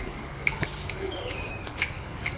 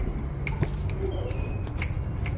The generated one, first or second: first